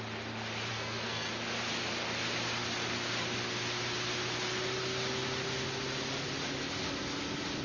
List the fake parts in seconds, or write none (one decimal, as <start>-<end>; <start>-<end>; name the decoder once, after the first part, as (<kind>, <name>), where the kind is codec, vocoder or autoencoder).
0.7-1.3 (codec, SNAC)